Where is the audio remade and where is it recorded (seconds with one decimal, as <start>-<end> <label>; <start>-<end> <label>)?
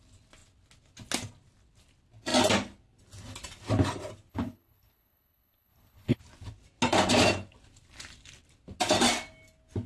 0.0-4.3 recorded; 4.3-6.2 remade; 6.2-9.9 recorded